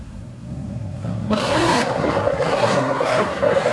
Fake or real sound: fake